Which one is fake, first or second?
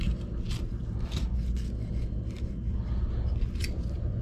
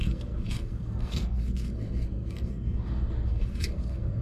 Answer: second